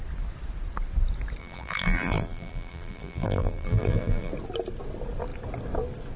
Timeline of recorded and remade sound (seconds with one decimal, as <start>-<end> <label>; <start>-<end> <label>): 0.0-1.4 recorded; 1.4-4.3 remade; 4.3-6.2 recorded